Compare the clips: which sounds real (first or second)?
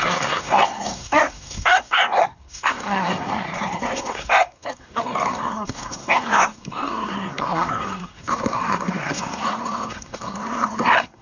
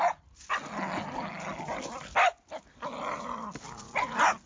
second